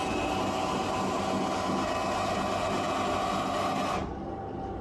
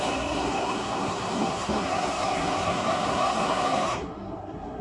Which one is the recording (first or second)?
first